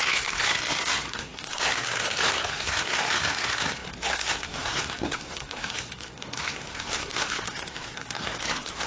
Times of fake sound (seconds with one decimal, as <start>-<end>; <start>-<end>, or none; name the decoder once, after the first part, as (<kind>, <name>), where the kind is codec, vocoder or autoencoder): 0.0-8.9 (codec, SNAC)